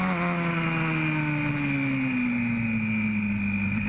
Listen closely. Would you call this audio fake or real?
real